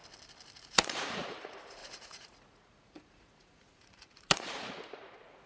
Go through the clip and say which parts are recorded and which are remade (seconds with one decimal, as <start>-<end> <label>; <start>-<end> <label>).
0.0-0.6 recorded; 0.6-5.5 remade